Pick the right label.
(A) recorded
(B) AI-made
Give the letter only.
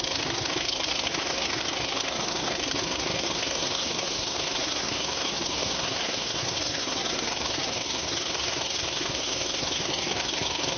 B